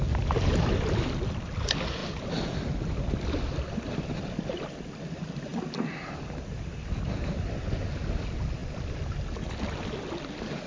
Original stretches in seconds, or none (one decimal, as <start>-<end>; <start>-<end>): 0.0-10.7

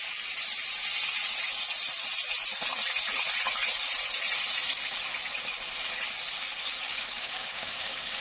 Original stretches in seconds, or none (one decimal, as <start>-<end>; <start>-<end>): 0.0-6.9

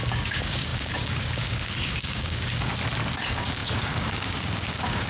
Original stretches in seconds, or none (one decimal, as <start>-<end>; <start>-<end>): 2.7-3.2

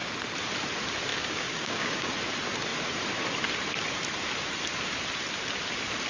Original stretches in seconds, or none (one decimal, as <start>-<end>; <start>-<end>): 0.0-1.1; 2.1-6.1

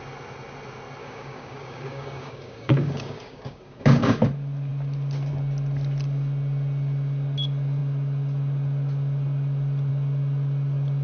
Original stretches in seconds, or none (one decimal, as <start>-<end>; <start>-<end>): 0.0-1.0; 4.2-11.0